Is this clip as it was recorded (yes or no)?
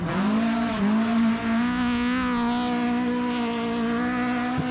yes